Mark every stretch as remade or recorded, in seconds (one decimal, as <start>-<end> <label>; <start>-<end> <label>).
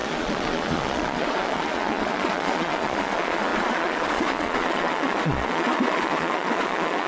0.0-7.1 remade